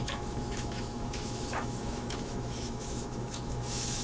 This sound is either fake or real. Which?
fake